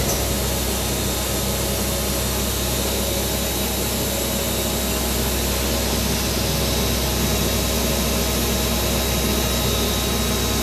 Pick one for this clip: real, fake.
real